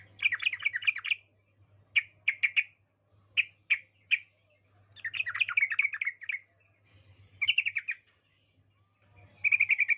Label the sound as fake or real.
real